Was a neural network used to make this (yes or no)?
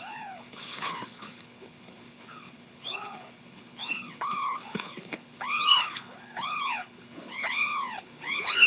yes